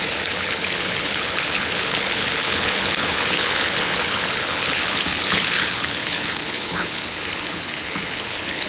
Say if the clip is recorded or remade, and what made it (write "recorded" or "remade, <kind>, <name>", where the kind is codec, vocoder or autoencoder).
remade, codec, HILCodec